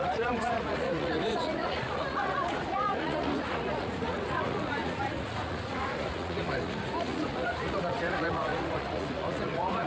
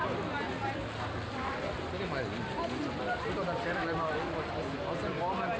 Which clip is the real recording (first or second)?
second